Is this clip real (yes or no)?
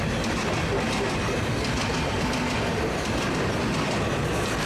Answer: yes